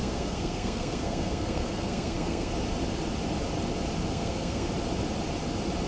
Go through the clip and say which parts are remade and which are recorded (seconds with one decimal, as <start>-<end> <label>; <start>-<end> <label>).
0.0-2.5 remade; 2.5-4.1 recorded; 4.1-4.7 remade; 4.7-5.9 recorded